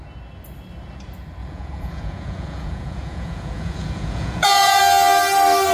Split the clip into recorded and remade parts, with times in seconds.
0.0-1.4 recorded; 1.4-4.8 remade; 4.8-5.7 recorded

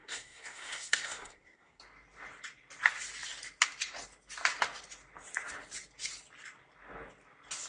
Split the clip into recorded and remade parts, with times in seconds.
0.0-1.8 remade; 1.8-7.7 recorded

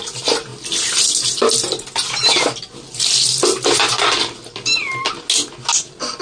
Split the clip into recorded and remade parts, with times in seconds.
0.0-6.2 recorded

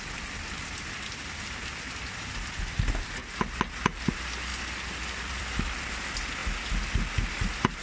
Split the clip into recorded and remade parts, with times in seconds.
0.0-4.5 recorded; 4.5-5.9 remade; 5.9-7.8 recorded

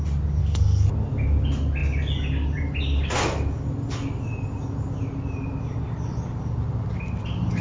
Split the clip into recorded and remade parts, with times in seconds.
0.0-0.4 recorded; 0.4-0.9 remade; 0.9-7.6 recorded

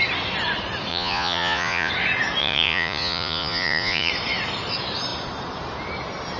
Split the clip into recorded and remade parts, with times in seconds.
0.0-0.9 recorded; 0.9-1.9 remade; 1.9-2.4 recorded; 2.4-4.1 remade; 4.1-6.4 recorded

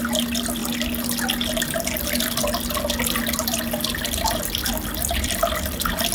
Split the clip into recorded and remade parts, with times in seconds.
0.0-6.1 recorded